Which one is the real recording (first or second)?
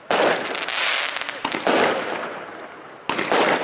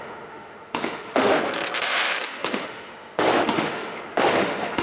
first